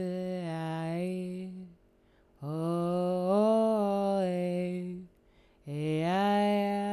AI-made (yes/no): no